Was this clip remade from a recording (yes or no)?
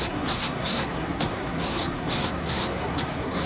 yes